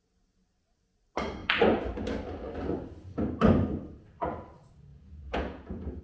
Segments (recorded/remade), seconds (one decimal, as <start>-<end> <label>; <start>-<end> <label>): 0.0-4.9 recorded; 4.9-6.0 remade